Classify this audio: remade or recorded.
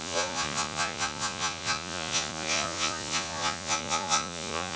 remade